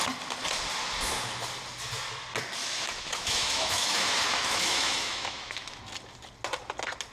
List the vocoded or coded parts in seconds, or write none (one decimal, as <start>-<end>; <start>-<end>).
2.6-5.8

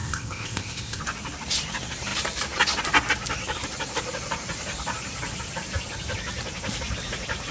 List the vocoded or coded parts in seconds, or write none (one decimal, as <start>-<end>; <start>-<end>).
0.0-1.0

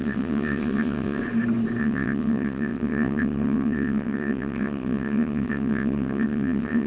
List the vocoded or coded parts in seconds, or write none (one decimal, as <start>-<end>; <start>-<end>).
0.0-1.2; 1.8-6.9